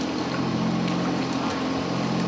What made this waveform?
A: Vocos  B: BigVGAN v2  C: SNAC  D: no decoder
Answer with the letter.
D